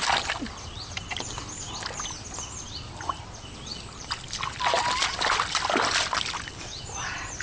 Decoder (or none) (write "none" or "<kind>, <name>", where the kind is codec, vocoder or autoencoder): none